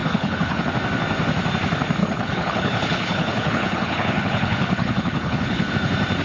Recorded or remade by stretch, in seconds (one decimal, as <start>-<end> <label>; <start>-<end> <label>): 0.0-0.7 remade; 0.7-2.0 recorded; 2.0-5.7 remade; 5.7-6.2 recorded